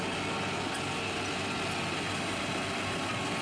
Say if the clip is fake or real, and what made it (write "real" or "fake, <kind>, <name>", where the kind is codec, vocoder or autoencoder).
real